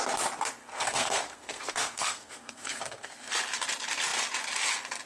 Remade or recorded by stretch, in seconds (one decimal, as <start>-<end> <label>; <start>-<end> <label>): 0.0-0.6 recorded; 0.6-3.3 remade; 3.3-5.1 recorded